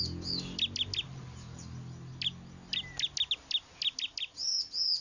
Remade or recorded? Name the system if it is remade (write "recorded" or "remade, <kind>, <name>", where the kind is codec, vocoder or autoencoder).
recorded